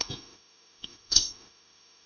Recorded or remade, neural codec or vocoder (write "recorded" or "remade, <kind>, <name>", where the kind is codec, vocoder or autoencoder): remade, autoencoder, DAC-VAE